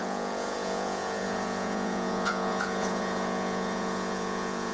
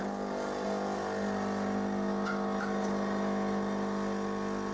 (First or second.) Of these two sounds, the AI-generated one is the first